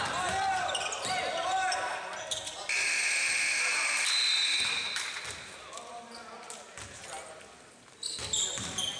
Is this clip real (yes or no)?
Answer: yes